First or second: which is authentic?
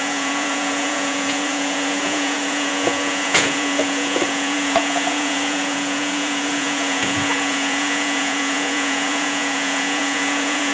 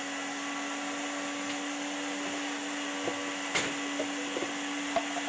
second